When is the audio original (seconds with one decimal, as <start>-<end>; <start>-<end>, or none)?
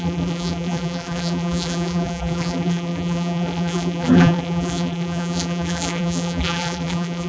none